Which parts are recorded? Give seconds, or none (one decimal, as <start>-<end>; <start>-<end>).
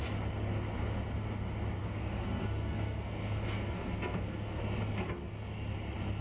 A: 0.0-1.8; 4.6-6.2